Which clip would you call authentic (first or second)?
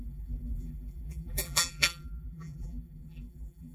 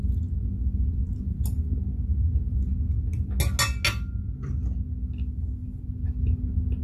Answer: second